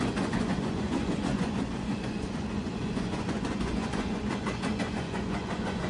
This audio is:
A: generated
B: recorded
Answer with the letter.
A